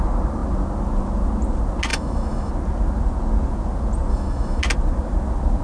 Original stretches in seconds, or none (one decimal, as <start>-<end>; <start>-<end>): 0.0-1.9; 2.5-4.1; 4.6-5.6